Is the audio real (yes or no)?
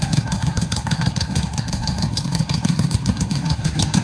no